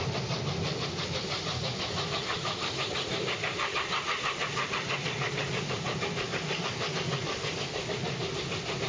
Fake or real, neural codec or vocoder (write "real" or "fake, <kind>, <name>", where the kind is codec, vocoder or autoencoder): real